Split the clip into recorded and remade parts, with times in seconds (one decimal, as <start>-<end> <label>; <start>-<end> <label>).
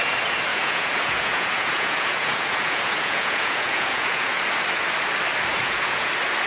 0.0-0.5 recorded; 0.5-4.4 remade; 4.4-5.5 recorded; 5.5-6.1 remade; 6.1-6.5 recorded